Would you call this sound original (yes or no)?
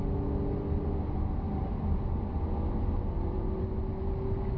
yes